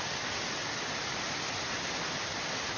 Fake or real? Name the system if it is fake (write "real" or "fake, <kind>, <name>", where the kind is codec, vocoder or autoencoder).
real